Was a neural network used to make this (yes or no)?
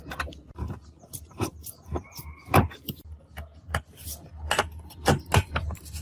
no